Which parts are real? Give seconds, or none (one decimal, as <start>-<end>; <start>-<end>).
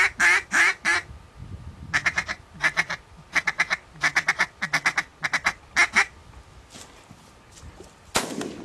0.0-8.6